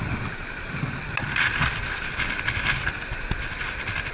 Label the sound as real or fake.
real